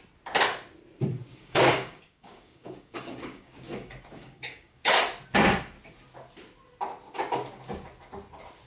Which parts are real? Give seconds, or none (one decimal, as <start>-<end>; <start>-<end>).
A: 0.0-1.3; 4.9-8.7

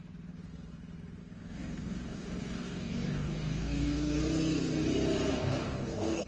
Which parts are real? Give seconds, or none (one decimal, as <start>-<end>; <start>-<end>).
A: 0.0-1.2; 4.2-5.3

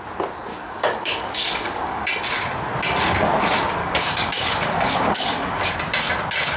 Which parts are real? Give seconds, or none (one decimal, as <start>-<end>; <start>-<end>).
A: 0.0-0.5; 2.1-3.8; 5.7-6.6

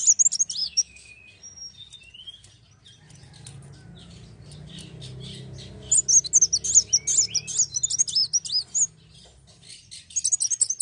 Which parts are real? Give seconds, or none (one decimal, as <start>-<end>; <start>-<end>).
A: 0.0-0.6; 1.1-10.8

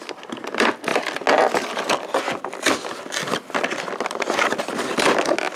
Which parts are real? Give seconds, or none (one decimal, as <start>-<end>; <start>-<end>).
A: 0.0-5.6